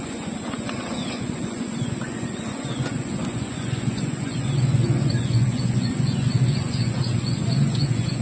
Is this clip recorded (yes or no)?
no